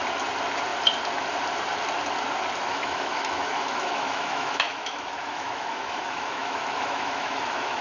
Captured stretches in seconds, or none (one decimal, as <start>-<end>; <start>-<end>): 0.0-2.7

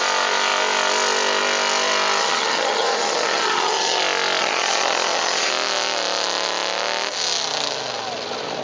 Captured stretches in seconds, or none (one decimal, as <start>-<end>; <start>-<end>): 0.0-2.2; 4.0-4.4; 5.5-8.6

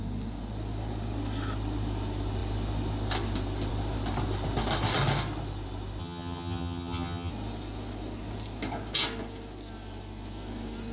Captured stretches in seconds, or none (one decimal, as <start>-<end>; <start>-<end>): 0.0-6.0; 7.3-10.9

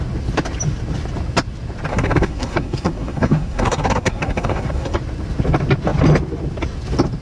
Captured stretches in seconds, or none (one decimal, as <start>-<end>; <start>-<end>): 0.0-1.9; 5.0-7.2